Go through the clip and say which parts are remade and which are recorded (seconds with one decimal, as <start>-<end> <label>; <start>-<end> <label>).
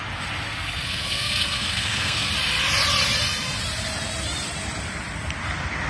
0.0-0.5 recorded; 0.5-2.3 remade; 2.3-5.9 recorded